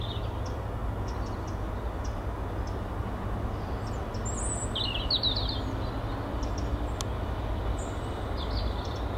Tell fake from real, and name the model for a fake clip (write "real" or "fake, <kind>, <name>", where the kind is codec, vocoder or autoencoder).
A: real